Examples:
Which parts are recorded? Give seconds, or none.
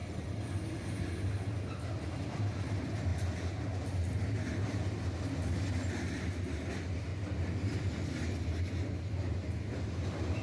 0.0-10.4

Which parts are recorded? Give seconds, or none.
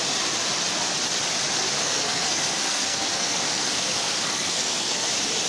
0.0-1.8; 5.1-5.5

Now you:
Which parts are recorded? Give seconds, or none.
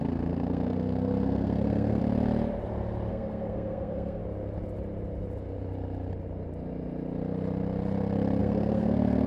2.0-3.1; 4.2-8.4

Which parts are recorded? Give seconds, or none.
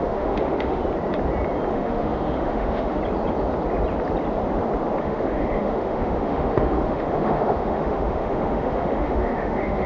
0.8-1.7; 3.0-5.0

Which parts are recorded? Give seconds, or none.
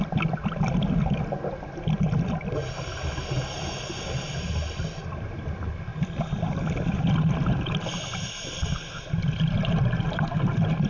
0.0-10.9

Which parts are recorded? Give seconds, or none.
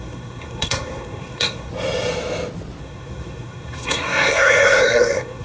1.7-2.8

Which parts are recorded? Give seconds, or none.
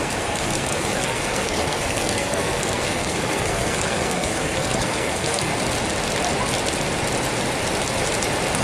5.5-8.6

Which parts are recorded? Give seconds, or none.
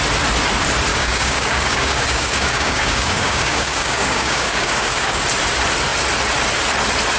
0.0-0.9; 5.2-7.2